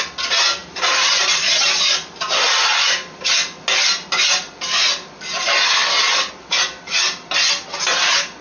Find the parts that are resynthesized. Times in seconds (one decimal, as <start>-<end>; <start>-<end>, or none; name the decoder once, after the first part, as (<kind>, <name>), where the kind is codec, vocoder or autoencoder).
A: 0.6-3.2 (vocoder, BigVGAN v2); 5.8-6.3